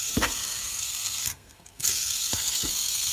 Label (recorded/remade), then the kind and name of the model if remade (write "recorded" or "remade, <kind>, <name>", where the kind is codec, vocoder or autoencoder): remade, codec, SNAC